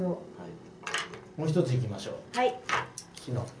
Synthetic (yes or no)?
no